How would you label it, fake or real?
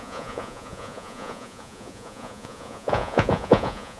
fake